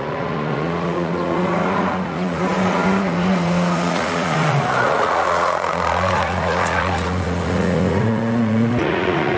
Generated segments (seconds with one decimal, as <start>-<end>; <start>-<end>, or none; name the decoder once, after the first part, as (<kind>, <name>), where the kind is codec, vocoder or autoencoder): 0.0-9.4 (vocoder, Vocos)